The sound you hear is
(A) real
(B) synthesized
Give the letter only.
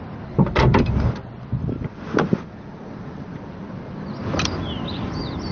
A